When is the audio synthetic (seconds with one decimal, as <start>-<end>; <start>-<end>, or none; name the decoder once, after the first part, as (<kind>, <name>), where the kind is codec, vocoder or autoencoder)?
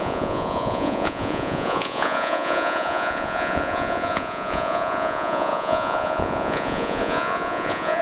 0.0-8.0 (vocoder, Vocos)